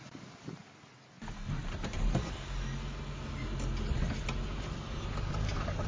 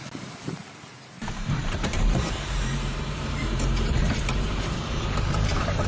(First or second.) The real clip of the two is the first